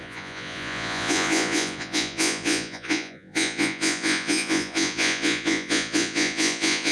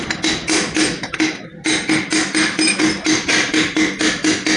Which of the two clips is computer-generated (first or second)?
first